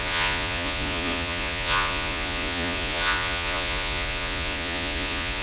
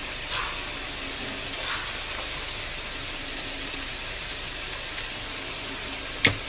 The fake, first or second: first